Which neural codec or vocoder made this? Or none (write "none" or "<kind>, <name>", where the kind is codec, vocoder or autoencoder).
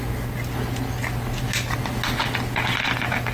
none